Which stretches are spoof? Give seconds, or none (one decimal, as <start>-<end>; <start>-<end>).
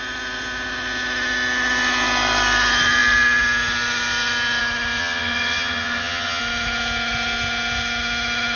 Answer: 5.0-6.4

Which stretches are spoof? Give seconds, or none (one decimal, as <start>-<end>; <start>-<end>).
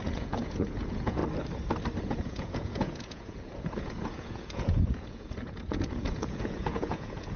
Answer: 0.0-1.2; 2.0-7.4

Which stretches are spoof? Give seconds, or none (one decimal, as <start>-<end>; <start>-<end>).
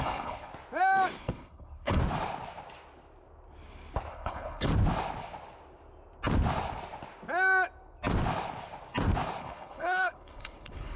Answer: 0.0-0.5; 1.2-2.0; 4.1-4.7; 9.4-11.0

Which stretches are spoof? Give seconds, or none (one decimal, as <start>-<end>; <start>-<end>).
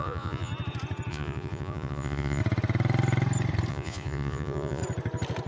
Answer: 0.0-0.5; 1.1-2.4; 3.7-4.8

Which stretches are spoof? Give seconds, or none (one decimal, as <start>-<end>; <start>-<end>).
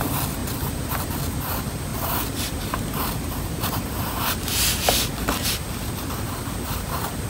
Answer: none